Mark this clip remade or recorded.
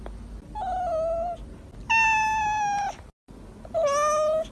recorded